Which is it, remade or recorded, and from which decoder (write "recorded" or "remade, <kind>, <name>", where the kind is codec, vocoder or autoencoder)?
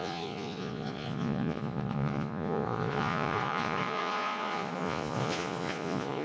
remade, vocoder, Vocos